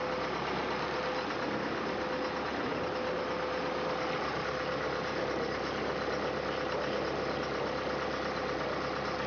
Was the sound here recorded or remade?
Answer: recorded